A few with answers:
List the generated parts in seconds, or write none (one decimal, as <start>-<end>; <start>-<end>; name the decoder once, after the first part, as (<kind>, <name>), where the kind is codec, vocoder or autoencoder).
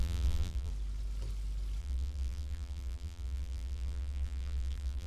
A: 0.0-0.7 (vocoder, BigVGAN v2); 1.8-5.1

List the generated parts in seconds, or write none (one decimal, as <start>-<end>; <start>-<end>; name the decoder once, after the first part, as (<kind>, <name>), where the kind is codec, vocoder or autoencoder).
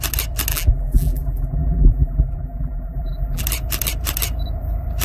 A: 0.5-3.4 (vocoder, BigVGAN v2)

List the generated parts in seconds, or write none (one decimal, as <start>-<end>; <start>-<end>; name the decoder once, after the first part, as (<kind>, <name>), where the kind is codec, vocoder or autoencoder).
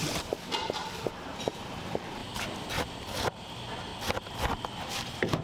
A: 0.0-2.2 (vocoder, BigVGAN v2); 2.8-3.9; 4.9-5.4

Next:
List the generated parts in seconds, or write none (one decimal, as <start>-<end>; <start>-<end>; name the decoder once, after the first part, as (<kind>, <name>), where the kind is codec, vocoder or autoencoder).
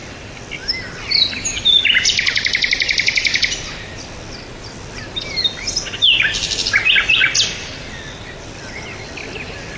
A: none